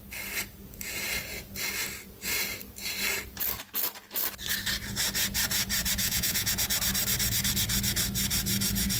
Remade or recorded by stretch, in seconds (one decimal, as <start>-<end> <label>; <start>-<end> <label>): 0.0-6.0 recorded; 6.0-6.5 remade; 6.5-9.0 recorded